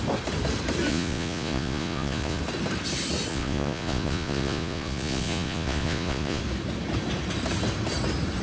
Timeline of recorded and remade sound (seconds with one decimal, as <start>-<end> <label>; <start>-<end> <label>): 0.0-0.9 recorded; 0.9-2.4 remade; 2.4-3.3 recorded; 3.3-6.4 remade; 6.4-8.4 recorded